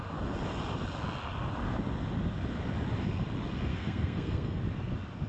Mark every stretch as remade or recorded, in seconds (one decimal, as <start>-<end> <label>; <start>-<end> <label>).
0.0-3.7 recorded; 3.7-4.6 remade; 4.6-5.3 recorded